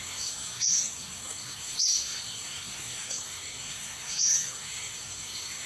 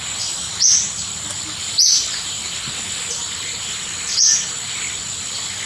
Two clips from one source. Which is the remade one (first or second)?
first